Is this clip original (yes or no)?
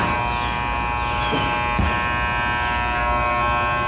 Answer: yes